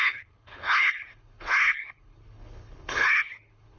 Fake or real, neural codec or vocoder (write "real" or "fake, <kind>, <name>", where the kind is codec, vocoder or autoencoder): fake, codec, HILCodec